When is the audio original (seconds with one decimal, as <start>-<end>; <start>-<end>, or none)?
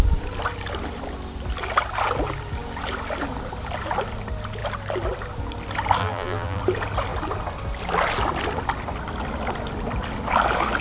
0.0-6.0; 6.6-10.8